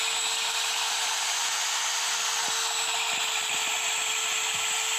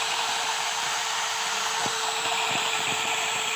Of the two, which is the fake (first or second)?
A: second